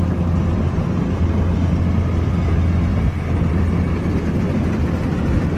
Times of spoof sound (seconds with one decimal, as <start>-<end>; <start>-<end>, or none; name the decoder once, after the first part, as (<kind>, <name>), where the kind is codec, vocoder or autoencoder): none